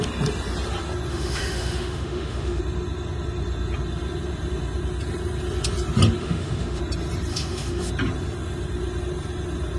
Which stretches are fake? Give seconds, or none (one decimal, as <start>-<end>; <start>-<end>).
1.1-2.6; 6.2-6.8; 7.3-7.9